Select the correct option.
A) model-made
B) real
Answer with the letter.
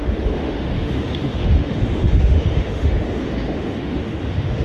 A